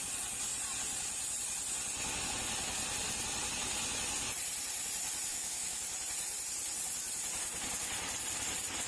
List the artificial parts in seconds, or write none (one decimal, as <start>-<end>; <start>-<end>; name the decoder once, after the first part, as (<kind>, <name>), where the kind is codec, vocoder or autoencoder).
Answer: 5.3-5.8 (autoencoder, DAC-VAE)